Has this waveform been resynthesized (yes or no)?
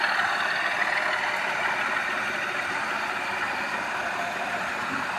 no